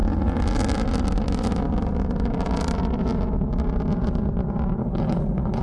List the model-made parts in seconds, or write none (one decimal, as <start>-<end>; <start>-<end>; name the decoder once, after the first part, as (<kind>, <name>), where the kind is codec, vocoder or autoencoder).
4.8-5.6 (codec, HILCodec)